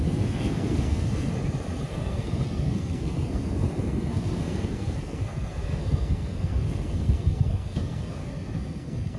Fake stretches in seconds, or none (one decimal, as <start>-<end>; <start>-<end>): 0.0-1.3; 1.9-9.2